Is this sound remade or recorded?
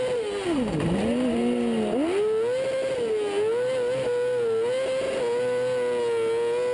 recorded